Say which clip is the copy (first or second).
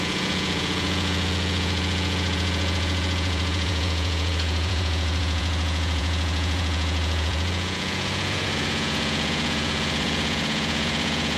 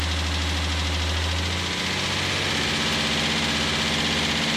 first